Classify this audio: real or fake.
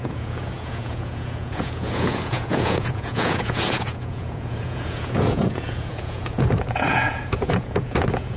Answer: fake